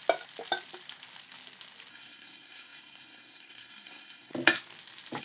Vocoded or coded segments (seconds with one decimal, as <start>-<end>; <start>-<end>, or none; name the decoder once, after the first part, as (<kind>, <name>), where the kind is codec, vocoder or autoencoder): 1.9-4.3 (codec, SNAC)